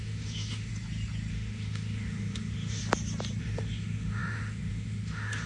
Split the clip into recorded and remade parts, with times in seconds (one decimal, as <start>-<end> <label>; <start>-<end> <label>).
0.0-0.7 remade; 0.7-1.3 recorded; 1.3-2.8 remade; 2.8-3.4 recorded; 3.4-5.5 remade